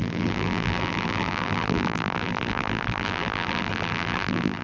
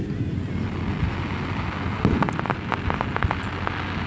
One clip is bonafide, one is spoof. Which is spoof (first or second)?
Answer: first